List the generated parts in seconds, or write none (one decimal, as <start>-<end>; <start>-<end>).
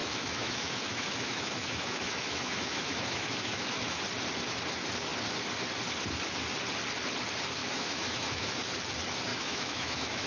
0.0-4.0; 7.6-8.5; 9.3-10.3